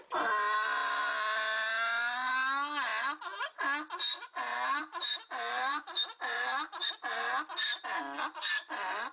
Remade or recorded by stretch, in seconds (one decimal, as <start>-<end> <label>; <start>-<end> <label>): 0.0-4.5 recorded; 4.5-6.9 remade; 6.9-9.1 recorded